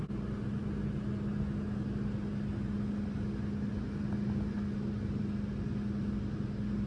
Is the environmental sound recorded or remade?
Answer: recorded